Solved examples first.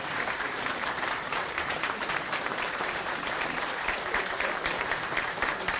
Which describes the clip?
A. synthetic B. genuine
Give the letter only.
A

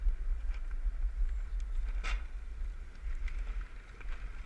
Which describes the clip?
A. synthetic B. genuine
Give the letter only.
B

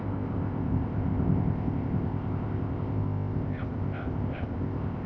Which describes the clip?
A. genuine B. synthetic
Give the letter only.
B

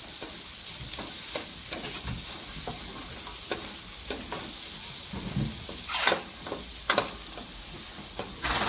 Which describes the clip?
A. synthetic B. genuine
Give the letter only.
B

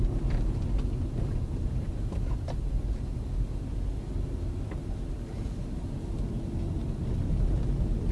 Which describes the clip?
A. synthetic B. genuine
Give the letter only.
B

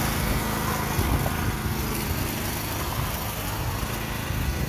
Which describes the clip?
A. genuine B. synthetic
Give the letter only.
A